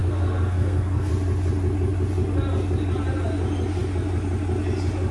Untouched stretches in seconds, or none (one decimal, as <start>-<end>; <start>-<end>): 1.1-5.1

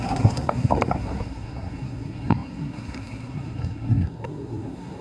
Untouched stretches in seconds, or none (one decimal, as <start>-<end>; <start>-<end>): none

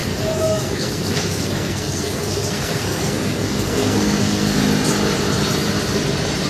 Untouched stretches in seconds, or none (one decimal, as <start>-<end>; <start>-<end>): 4.6-6.5

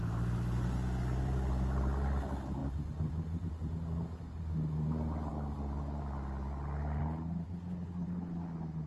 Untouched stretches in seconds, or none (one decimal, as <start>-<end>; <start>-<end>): 0.0-8.9

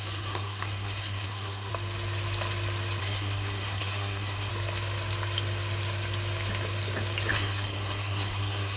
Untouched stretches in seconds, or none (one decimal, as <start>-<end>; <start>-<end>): 1.7-3.0; 4.5-7.3